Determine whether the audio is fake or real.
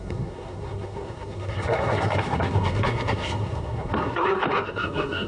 fake